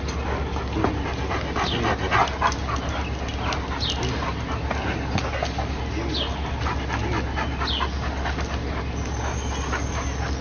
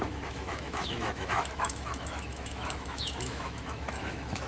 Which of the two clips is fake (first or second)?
second